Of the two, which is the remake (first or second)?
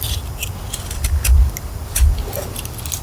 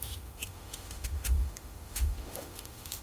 second